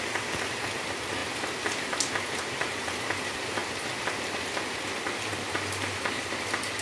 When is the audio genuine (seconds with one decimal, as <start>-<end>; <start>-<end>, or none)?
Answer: 0.0-6.8